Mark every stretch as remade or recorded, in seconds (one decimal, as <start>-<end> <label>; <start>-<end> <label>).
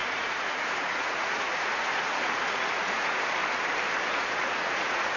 0.0-3.4 remade; 3.4-4.0 recorded; 4.0-5.2 remade